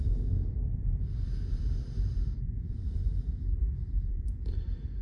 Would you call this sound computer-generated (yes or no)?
yes